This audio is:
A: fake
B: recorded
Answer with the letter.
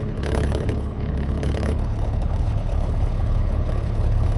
A